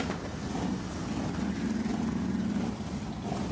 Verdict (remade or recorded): recorded